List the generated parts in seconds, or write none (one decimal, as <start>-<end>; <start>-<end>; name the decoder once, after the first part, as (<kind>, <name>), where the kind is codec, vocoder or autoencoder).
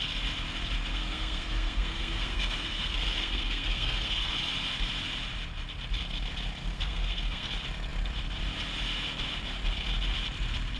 0.9-4.3 (codec, SNAC); 6.6-7.5